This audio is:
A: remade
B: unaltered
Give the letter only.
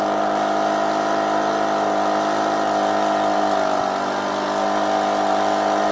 B